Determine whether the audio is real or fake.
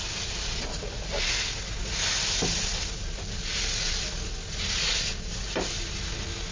real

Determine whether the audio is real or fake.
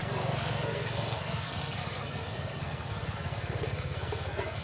fake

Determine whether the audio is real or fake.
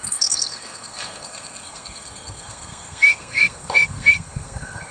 fake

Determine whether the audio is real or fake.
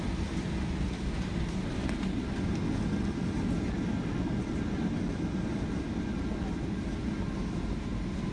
real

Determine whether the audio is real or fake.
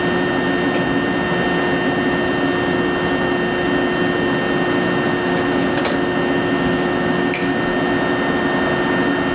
real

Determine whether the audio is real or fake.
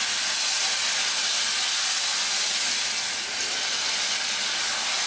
real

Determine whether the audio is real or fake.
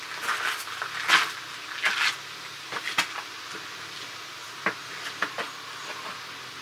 real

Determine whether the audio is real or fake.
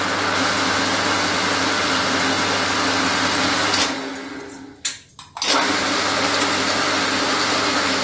real